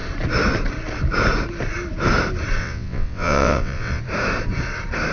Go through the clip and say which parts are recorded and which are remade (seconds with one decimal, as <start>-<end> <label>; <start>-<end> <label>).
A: 0.0-2.6 recorded; 2.6-4.0 remade; 4.0-5.1 recorded